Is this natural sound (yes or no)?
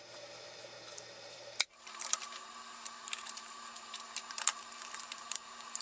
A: no